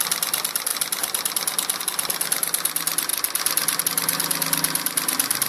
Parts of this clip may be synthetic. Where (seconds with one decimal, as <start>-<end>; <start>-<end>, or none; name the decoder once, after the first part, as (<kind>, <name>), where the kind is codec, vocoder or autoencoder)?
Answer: none